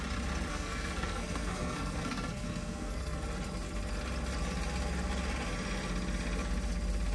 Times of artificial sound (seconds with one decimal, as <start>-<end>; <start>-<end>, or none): 0.5-3.2